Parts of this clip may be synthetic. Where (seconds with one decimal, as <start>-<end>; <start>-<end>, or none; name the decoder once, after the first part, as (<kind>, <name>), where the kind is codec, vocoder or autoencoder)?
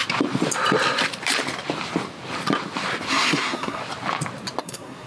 3.1-3.8 (codec, SNAC); 4.6-5.1